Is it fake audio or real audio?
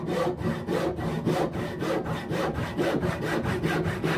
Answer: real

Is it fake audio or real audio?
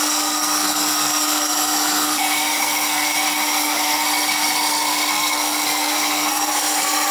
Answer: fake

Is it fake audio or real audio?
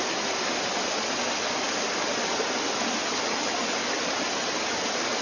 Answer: real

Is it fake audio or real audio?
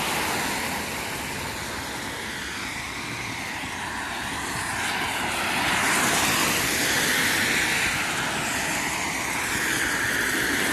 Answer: real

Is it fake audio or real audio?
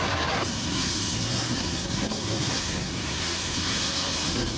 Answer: fake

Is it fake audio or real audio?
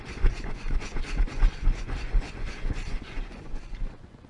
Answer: fake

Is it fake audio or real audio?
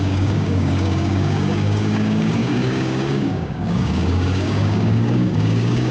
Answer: fake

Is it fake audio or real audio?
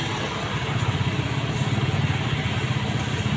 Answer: real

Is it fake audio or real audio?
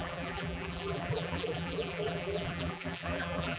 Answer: fake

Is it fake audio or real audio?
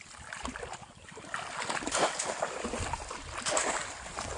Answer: fake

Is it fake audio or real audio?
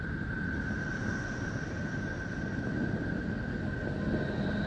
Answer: real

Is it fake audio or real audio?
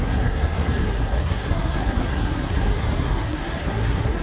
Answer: fake